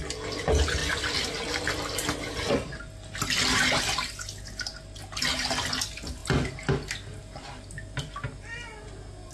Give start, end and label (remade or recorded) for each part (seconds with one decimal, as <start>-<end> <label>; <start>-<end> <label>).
0.0-9.3 recorded